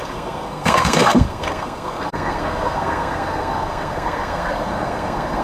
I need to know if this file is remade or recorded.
remade